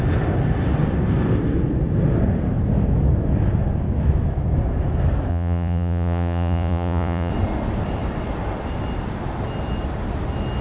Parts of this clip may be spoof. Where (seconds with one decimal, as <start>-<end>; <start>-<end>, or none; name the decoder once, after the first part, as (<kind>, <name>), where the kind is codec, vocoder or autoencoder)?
5.3-7.3 (vocoder, Vocos)